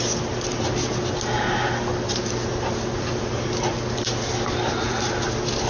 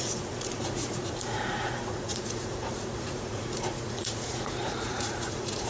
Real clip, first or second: first